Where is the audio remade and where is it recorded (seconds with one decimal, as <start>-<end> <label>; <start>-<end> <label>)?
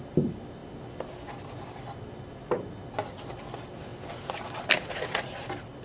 0.0-5.8 recorded